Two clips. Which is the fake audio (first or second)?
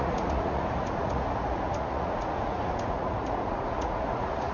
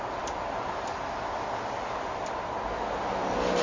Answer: first